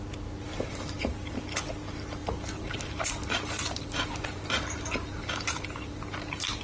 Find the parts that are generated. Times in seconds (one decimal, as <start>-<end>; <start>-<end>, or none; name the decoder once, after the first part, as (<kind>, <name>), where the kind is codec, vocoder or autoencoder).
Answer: 0.5-1.1 (vocoder, BigVGAN v2); 2.2-6.6